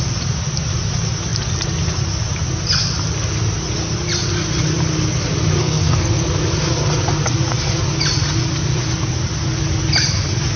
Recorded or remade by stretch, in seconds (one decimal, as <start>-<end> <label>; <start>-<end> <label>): 0.0-5.6 recorded; 5.6-6.2 remade; 6.2-10.6 recorded